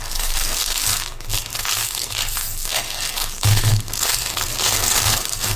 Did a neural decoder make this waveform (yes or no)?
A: yes